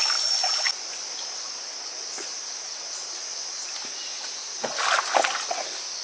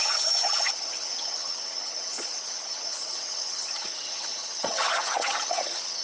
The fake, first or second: second